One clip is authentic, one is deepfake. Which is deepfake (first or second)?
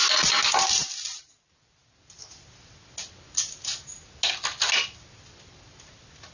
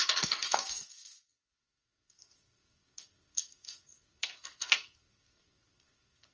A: second